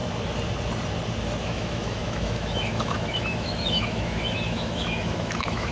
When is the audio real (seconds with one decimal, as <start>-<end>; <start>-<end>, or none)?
0.0-1.4